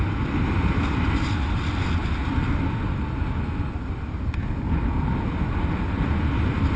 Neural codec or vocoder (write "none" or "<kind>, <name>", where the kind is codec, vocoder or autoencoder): none